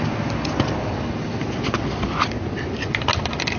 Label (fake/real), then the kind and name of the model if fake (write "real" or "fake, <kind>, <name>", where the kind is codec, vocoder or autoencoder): real